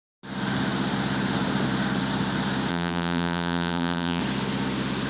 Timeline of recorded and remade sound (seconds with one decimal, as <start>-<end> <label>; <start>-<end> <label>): 0.0-2.7 recorded; 2.7-4.2 remade; 4.2-5.1 recorded